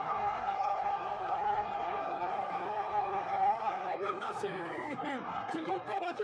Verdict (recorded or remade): remade